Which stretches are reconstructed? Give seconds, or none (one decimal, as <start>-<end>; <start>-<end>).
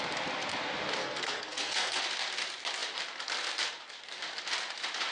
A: 1.0-2.0